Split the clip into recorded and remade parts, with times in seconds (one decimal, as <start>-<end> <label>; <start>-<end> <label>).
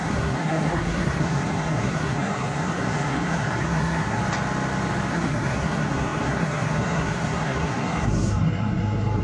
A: 0.0-4.2 remade; 4.2-5.1 recorded; 5.1-9.2 remade